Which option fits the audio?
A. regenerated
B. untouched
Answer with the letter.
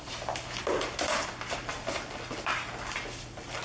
B